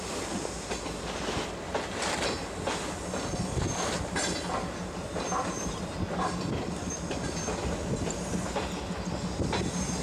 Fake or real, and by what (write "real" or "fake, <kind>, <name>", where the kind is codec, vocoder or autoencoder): real